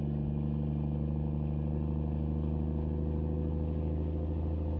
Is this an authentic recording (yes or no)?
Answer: yes